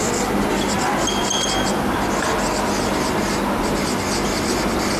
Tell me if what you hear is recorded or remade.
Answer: recorded